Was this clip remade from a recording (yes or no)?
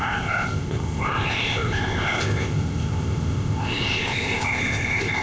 yes